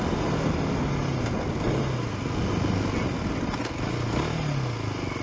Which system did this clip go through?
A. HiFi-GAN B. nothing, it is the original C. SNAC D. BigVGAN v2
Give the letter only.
B